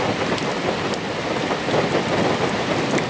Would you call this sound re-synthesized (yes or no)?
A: no